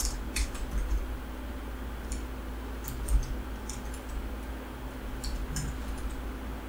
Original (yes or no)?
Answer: yes